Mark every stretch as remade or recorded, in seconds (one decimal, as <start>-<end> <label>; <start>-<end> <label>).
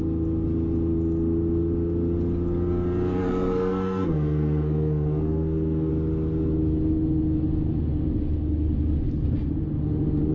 0.0-3.2 recorded; 3.2-5.9 remade; 5.9-10.3 recorded